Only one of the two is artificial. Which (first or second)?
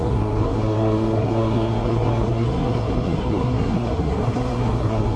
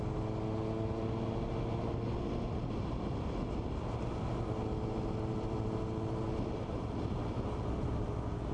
first